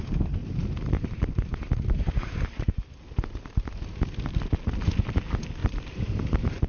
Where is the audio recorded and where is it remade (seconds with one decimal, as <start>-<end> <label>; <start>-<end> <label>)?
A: 0.0-0.4 recorded; 0.4-3.1 remade; 3.1-5.6 recorded; 5.6-6.2 remade; 6.2-6.7 recorded